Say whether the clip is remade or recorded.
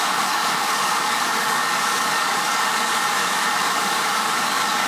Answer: remade